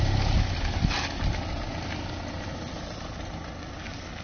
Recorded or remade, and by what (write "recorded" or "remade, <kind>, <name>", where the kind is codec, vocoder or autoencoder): recorded